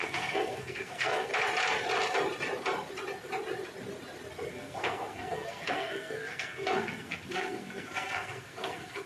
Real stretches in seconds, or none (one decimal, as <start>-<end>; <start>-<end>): 1.3-4.5